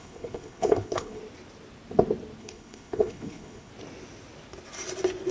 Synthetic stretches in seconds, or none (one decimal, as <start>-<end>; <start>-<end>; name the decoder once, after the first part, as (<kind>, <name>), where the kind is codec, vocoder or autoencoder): 0.0-1.2 (codec, HILCodec); 2.4-3.7

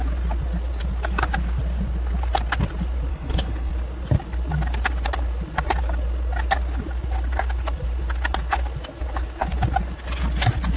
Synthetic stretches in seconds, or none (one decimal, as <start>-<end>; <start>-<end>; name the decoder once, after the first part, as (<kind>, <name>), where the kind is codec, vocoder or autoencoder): 3.1-3.7 (codec, HILCodec)

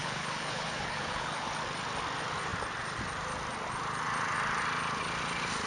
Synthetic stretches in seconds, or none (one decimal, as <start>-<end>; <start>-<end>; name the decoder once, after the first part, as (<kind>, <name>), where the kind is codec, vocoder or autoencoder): 0.0-1.5 (codec, HILCodec)

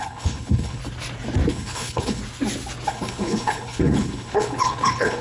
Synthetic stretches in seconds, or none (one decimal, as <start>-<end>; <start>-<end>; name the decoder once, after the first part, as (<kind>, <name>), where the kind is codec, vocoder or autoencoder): 0.0-0.8 (codec, HILCodec); 1.5-2.2; 2.9-5.2

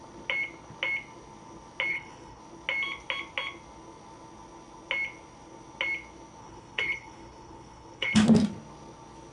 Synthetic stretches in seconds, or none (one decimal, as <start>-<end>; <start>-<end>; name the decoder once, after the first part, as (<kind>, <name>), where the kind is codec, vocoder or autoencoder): 1.9-2.4 (codec, HILCodec); 6.4-8.1

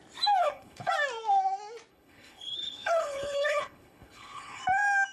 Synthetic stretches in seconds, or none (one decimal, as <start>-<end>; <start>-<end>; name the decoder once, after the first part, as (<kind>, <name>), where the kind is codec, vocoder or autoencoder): 0.4-0.9 (codec, HILCodec); 1.9-4.6